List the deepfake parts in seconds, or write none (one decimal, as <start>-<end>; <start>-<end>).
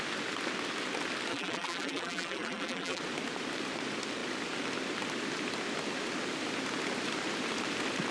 1.3-3.0